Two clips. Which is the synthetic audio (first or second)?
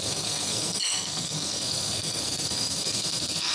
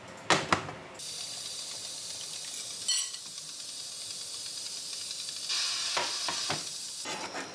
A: first